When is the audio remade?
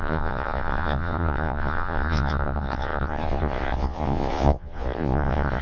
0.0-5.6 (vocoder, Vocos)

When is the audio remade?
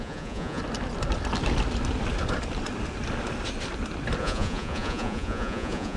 0.0-0.6 (vocoder, Vocos); 4.2-6.0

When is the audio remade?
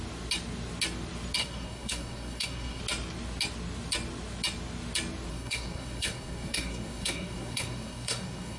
1.4-2.8 (codec, SNAC); 5.3-8.6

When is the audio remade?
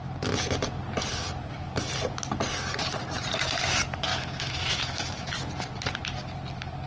4.1-5.3 (autoencoder, DAC-VAE)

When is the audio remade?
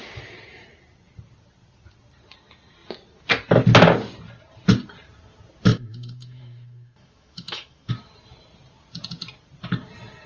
5.7-7.9 (autoencoder, DAC-VAE)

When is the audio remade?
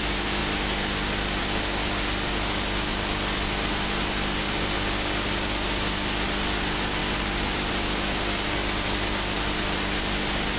2.9-3.7 (vocoder, BigVGAN v2); 7.0-7.7; 8.6-10.2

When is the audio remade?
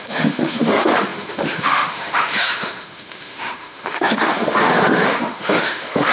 0.0-6.1 (autoencoder, DAC-VAE)